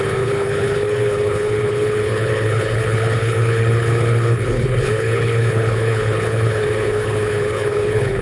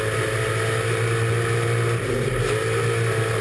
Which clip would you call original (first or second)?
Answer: second